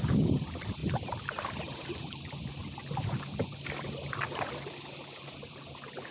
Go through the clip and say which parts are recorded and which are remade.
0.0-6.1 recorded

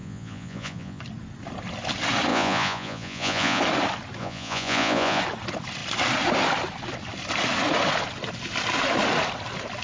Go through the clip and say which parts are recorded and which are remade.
0.0-1.0 remade; 1.0-2.3 recorded; 2.3-3.6 remade; 3.6-4.2 recorded; 4.2-5.2 remade; 5.2-9.8 recorded

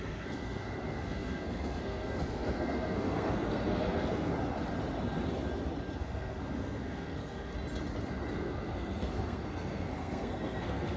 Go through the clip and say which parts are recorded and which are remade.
0.0-4.3 remade; 4.3-6.0 recorded; 6.0-7.5 remade; 7.5-8.3 recorded; 8.3-11.0 remade